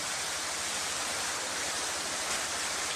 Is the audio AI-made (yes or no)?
yes